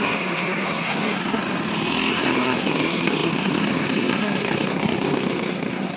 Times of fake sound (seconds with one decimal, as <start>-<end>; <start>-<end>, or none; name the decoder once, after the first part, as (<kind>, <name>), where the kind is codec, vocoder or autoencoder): 0.0-1.4 (codec, SNAC); 2.1-6.0